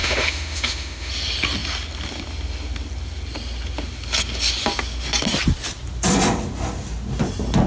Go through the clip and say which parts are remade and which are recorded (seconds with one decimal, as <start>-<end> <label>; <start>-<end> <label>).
0.0-1.1 remade; 1.1-7.7 recorded